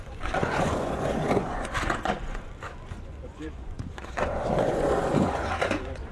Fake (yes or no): yes